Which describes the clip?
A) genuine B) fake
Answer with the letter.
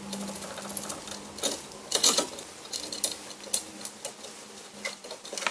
A